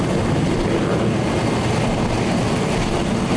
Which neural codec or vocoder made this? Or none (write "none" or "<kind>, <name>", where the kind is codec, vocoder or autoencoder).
none